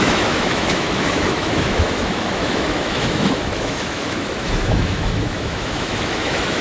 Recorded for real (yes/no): no